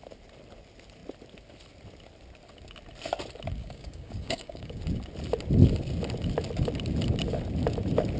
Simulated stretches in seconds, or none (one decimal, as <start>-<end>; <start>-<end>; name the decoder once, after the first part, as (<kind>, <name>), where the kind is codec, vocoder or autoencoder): 3.6-4.8 (codec, DAC)